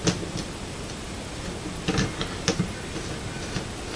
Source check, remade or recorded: recorded